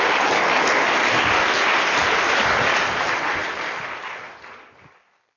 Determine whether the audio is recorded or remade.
recorded